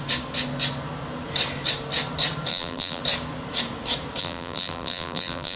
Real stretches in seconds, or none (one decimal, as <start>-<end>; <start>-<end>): 0.0-2.5; 3.0-4.2